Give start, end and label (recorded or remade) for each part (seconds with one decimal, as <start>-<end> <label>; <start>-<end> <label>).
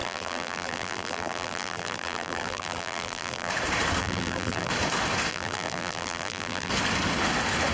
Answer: 0.0-3.5 remade; 3.5-4.0 recorded; 4.0-4.7 remade; 4.7-5.3 recorded; 5.3-6.7 remade; 6.7-7.7 recorded